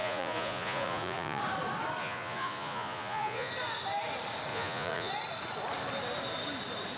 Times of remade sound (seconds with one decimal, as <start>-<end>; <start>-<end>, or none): 0.0-1.4; 2.0-3.5; 4.5-5.1

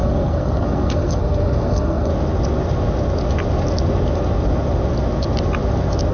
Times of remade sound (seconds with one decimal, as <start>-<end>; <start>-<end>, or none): 0.0-2.1